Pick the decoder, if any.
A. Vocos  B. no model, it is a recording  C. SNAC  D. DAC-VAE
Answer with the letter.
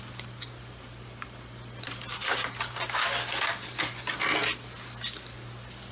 B